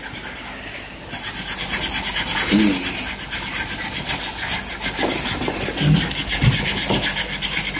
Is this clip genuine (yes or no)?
yes